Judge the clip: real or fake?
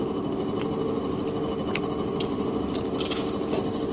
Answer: real